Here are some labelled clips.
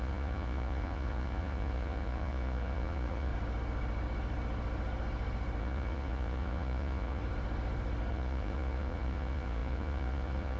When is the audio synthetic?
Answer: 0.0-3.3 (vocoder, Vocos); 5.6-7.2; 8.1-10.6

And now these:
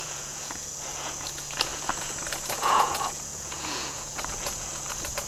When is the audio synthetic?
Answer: 0.0-5.3 (vocoder, Vocos)

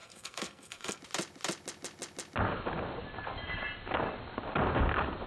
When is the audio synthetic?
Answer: 0.0-1.0 (codec, SNAC)

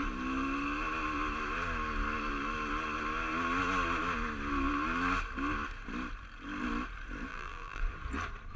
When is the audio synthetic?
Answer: 7.3-7.8 (vocoder, BigVGAN v2)

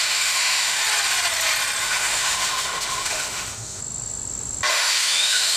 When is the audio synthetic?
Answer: 0.0-0.8 (autoencoder, DAC-VAE); 1.8-3.8; 4.7-5.6

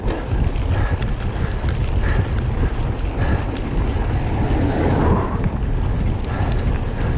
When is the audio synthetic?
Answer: none

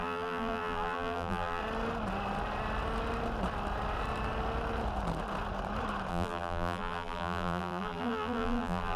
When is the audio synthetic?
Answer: 0.0-1.6 (vocoder, BigVGAN v2); 6.1-9.0

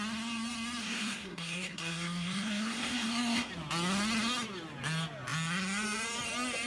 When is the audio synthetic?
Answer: 0.8-3.5 (codec, SNAC)